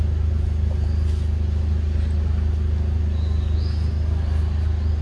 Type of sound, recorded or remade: recorded